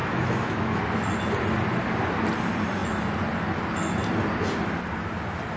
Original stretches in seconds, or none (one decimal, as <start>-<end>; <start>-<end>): 0.8-5.6